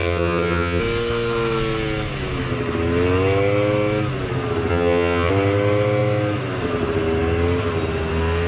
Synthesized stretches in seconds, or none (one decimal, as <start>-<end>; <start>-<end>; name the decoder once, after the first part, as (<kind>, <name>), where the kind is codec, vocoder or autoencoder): 0.0-0.8 (vocoder, HiFi-GAN); 4.7-5.3